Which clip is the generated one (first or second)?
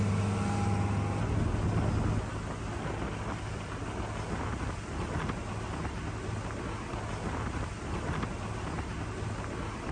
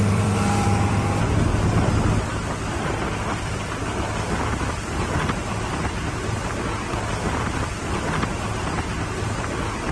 second